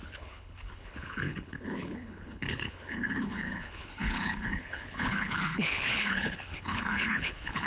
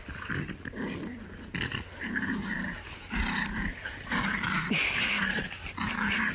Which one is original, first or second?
second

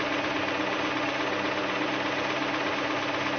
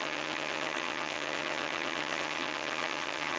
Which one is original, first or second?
first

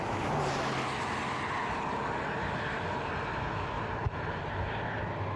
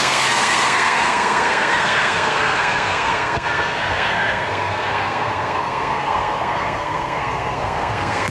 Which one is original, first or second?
first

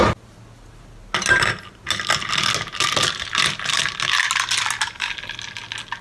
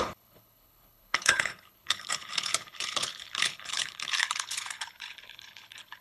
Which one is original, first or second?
first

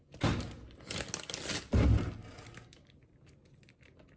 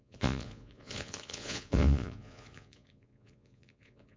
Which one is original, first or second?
first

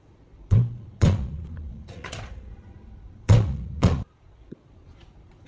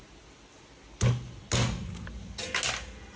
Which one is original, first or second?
second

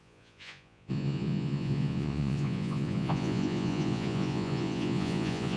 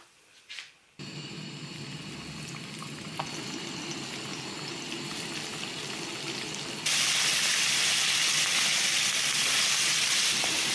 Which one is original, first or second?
second